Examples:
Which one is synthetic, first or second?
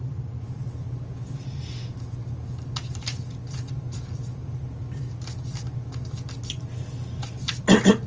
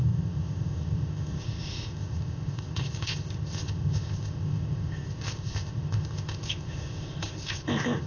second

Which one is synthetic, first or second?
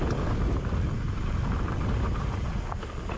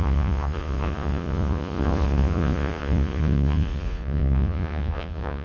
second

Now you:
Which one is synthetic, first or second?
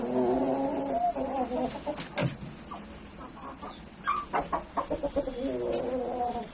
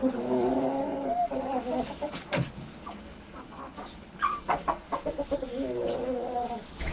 second